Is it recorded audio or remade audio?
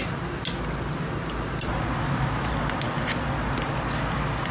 recorded